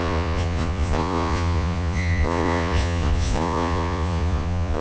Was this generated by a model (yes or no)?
yes